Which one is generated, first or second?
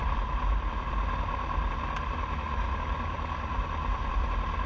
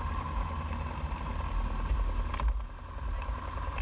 first